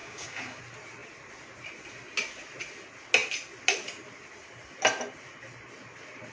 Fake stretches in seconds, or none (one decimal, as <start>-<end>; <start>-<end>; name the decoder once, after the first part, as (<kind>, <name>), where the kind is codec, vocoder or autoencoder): 0.0-0.6 (codec, DAC)